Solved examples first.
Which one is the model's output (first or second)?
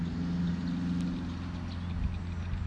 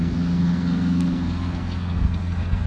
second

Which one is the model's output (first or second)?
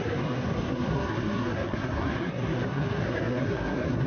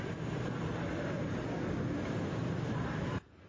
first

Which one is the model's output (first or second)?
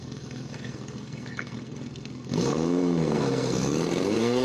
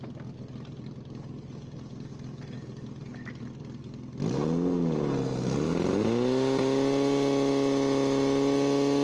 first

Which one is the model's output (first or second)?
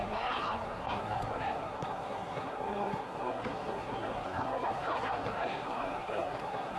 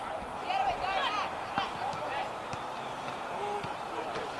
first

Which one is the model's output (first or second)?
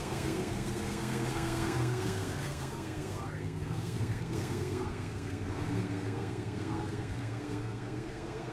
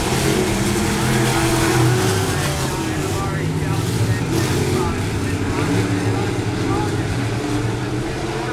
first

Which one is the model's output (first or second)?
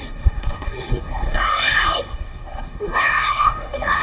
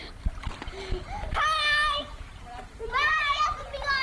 first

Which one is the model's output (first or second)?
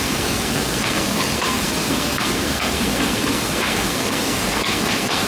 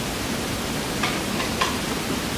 first